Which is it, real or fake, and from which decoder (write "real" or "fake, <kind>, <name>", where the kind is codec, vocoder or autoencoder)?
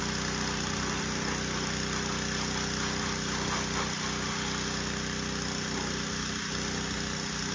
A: real